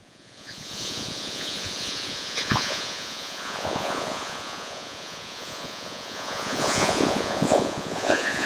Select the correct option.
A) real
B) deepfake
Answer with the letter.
B